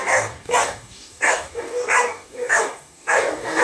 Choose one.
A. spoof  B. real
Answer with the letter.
A